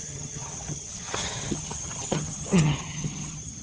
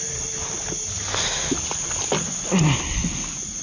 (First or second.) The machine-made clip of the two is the first